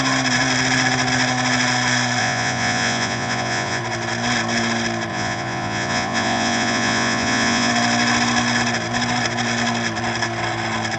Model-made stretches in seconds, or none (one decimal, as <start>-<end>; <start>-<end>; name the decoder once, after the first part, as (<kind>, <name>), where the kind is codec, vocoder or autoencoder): 2.2-3.8 (vocoder, Vocos); 5.1-7.7